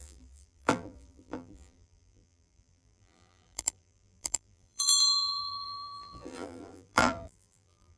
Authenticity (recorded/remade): remade